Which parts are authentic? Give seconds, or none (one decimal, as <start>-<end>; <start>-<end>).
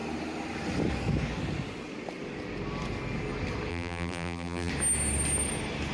0.0-3.7; 4.7-5.9